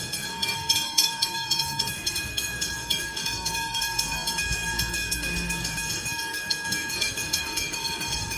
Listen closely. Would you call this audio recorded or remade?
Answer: remade